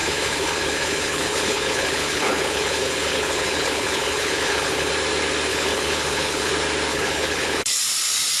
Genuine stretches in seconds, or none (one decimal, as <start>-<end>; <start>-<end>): 4.9-5.5; 6.5-6.9; 7.8-8.4

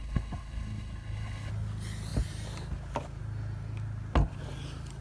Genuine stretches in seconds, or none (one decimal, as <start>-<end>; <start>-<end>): 1.5-5.0

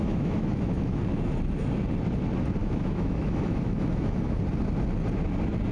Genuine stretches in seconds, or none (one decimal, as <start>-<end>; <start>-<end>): 1.0-2.6; 4.4-5.7

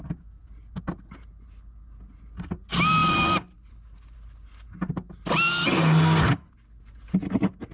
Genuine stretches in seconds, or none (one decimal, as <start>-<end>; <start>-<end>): 0.0-7.7